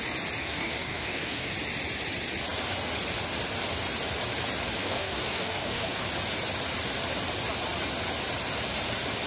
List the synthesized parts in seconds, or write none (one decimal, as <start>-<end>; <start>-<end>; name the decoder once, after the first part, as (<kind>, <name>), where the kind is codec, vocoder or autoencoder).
0.4-1.5 (codec, DAC); 4.8-6.0